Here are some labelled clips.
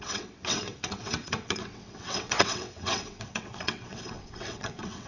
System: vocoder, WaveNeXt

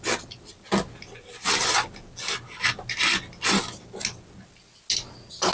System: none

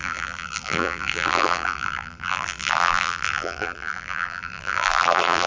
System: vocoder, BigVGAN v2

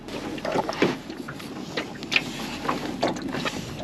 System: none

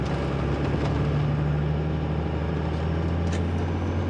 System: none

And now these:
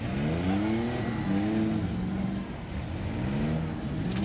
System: none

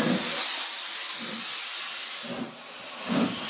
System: none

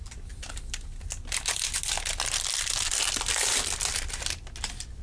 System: none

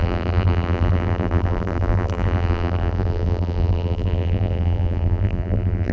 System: vocoder, BigVGAN v2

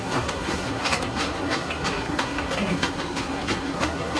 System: codec, SNAC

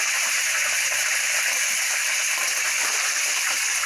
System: none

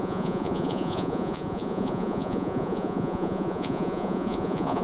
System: vocoder, Vocos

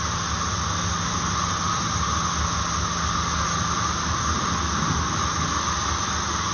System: none